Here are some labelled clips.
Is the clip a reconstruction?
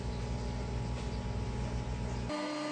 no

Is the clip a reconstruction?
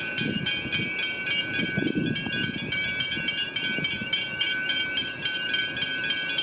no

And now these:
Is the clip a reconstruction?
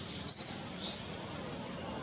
no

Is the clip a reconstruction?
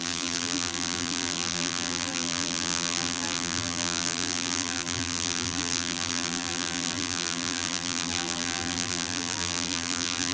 yes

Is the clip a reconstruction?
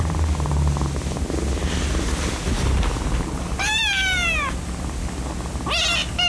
no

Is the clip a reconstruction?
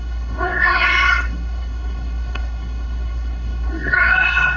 yes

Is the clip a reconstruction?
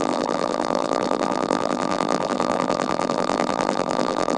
yes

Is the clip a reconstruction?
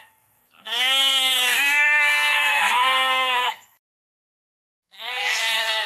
yes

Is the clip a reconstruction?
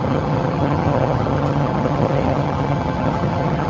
yes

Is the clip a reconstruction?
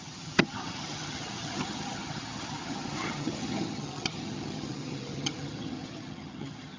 yes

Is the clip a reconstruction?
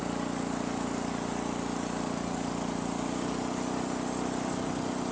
no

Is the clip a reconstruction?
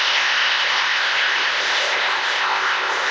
yes